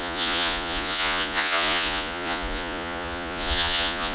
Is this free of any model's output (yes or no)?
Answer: no